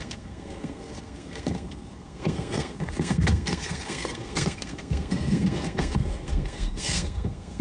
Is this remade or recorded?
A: remade